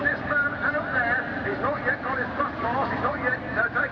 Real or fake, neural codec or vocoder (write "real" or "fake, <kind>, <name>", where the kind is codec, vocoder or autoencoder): real